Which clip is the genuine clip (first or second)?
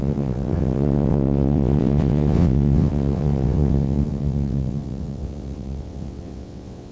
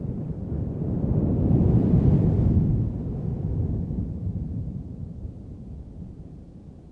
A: second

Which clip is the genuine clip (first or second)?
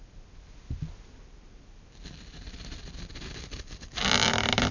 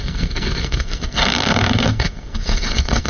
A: first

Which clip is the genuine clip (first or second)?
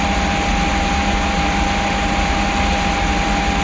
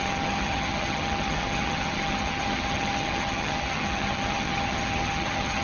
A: first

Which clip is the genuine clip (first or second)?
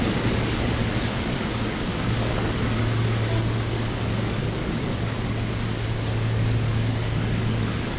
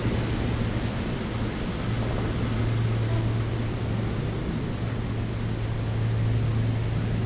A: second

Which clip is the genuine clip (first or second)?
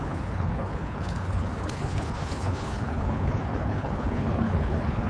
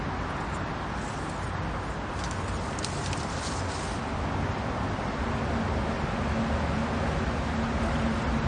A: second